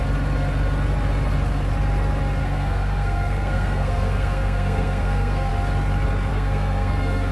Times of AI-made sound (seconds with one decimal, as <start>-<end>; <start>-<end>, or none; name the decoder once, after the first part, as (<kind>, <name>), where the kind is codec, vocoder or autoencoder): 2.4-5.5 (codec, SNAC); 6.3-7.3